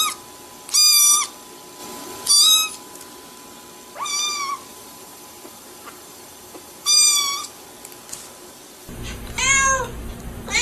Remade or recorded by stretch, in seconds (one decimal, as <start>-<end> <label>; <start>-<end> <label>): 0.0-4.7 recorded; 4.7-7.2 remade; 7.2-8.8 recorded; 8.8-9.4 remade; 9.4-10.6 recorded